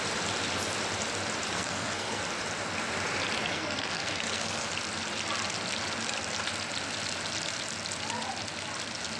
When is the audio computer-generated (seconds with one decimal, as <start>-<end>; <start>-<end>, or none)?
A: 1.5-2.2; 3.5-4.7